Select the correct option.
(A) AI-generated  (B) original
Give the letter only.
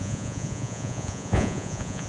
A